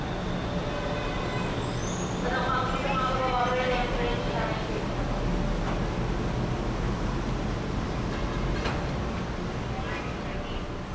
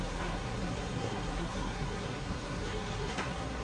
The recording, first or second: first